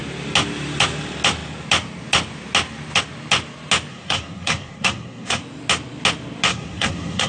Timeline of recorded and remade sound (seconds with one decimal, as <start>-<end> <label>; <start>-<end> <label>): 0.0-3.9 recorded; 3.9-5.4 remade; 5.4-6.5 recorded; 6.5-7.3 remade